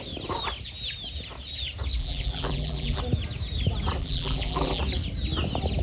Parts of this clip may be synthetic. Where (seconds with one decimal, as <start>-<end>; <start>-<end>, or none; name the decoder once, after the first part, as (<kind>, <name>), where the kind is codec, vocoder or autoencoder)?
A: 2.0-3.0 (vocoder, BigVGAN v2); 4.0-4.8